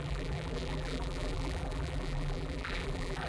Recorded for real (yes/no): no